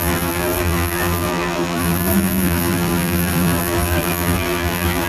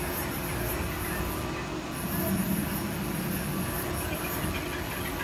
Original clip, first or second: second